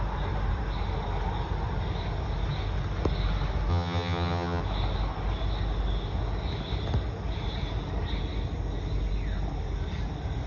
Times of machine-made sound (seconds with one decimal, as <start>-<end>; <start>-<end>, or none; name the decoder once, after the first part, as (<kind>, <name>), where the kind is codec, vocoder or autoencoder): 3.7-4.6 (vocoder, HiFi-GAN)

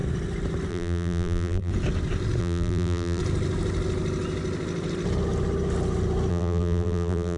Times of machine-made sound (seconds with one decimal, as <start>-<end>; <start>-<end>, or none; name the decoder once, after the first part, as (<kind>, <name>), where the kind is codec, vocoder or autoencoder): 0.7-1.7 (vocoder, BigVGAN v2); 2.4-3.2; 6.3-7.4

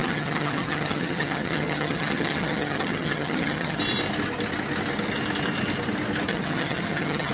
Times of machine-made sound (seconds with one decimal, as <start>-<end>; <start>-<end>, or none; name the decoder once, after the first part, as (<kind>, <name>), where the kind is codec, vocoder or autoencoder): 0.0-3.8 (vocoder, HiFi-GAN); 6.3-7.3

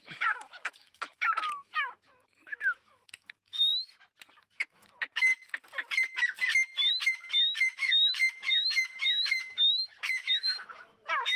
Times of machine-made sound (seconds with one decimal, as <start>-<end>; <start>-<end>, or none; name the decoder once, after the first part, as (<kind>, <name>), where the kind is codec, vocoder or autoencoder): 0.0-3.7 (autoencoder, DAC-VAE); 4.4-5.3; 6.9-11.4

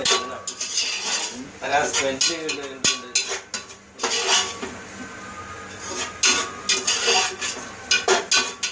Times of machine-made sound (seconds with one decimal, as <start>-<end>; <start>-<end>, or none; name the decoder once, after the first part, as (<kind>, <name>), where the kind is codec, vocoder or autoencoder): none

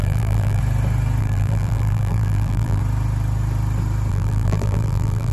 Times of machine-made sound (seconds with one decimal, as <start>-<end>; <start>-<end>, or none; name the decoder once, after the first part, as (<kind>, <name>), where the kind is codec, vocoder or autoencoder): 0.0-0.6 (vocoder, BigVGAN v2); 1.2-2.8; 4.1-5.3